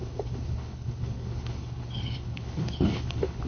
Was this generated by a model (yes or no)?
yes